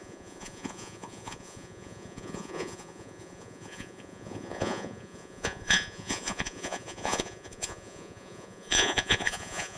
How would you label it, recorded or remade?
remade